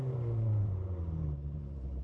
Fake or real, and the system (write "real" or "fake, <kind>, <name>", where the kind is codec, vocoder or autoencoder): fake, vocoder, BigVGAN v2